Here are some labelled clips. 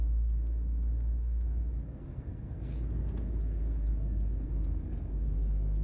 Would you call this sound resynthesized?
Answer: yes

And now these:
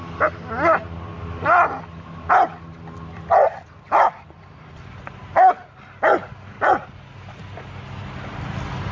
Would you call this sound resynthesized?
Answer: no